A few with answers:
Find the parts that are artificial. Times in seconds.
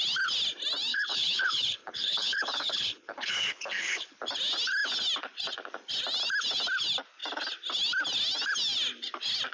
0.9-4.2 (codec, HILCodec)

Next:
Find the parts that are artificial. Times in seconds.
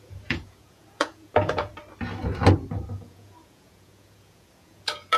0.0-1.7 (vocoder, Vocos); 2.9-5.2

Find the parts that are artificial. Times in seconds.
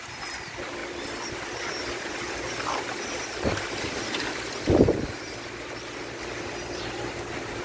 none